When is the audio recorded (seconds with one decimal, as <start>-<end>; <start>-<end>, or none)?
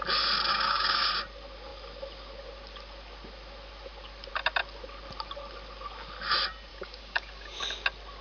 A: 0.0-0.5; 1.1-6.7; 7.6-8.2